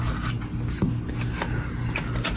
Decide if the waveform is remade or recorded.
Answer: recorded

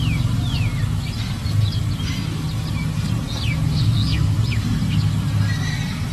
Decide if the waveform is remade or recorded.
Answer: recorded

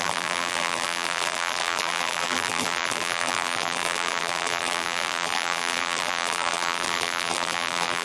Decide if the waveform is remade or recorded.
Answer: remade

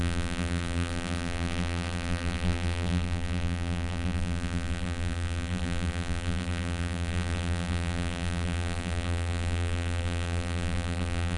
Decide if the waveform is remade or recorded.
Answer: remade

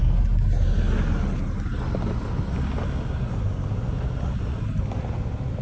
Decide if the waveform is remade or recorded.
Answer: recorded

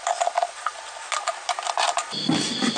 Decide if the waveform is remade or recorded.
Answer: recorded